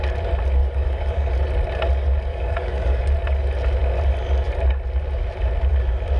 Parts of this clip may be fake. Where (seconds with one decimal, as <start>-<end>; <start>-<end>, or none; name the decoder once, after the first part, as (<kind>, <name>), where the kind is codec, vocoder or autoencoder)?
0.6-1.3 (codec, DAC); 2.3-3.0